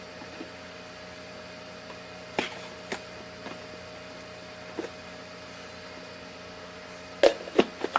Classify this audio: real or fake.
real